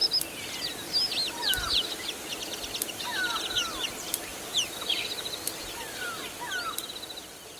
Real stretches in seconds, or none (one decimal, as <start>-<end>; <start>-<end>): 0.0-4.3; 5.5-7.6